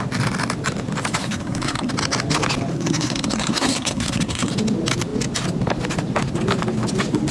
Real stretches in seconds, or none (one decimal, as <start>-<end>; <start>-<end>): 0.0-1.2; 1.9-2.7; 4.5-7.3